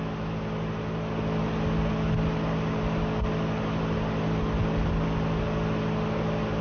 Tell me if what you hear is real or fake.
real